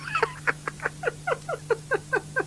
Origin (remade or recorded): recorded